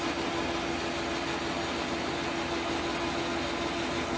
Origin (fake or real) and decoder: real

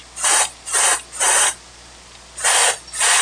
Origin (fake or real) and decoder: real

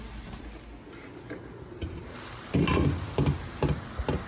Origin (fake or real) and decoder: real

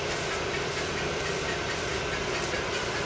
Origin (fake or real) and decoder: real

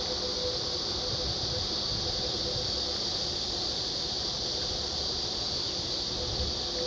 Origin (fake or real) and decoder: real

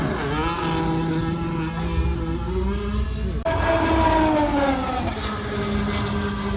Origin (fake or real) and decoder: real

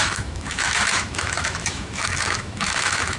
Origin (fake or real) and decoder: fake, autoencoder, DAC-VAE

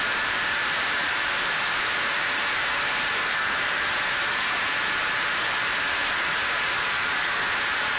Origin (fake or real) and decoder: fake, vocoder, BigVGAN v2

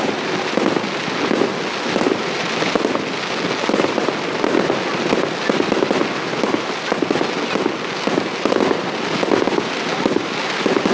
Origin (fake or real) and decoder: real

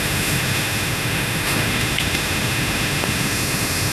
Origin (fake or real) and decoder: fake, autoencoder, DAC-VAE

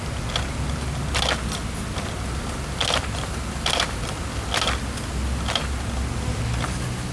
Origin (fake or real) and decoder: real